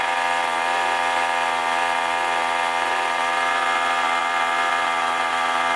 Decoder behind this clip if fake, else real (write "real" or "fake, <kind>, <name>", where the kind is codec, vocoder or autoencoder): real